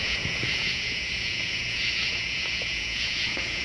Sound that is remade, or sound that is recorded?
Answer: remade